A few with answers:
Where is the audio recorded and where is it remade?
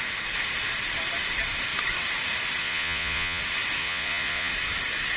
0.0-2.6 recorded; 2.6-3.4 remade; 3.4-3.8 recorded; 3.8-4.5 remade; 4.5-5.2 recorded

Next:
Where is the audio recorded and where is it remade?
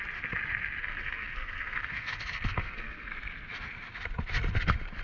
0.0-0.8 recorded; 0.8-3.1 remade; 3.1-5.0 recorded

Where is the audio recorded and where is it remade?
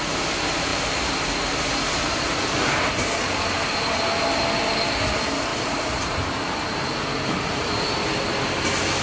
0.0-0.7 recorded; 0.7-4.5 remade; 4.5-5.5 recorded; 5.5-7.9 remade; 7.9-9.0 recorded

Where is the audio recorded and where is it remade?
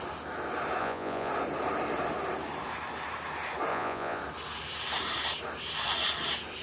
0.0-0.8 recorded; 0.8-1.3 remade; 1.3-3.7 recorded; 3.7-4.2 remade; 4.2-6.6 recorded